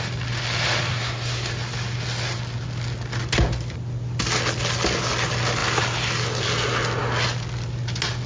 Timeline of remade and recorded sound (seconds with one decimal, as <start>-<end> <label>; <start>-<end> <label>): 0.0-0.9 recorded; 0.9-1.5 remade; 1.5-8.3 recorded